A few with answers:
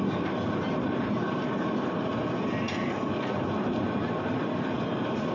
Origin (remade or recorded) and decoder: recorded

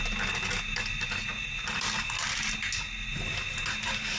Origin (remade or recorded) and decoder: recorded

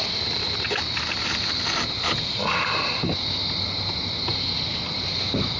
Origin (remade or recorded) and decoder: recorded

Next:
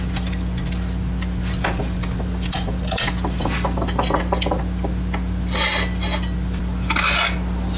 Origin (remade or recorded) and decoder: recorded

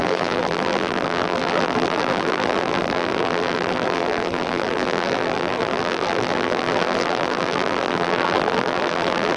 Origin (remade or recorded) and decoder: remade, vocoder, BigVGAN v2